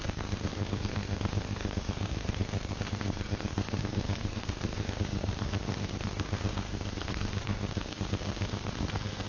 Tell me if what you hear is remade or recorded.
remade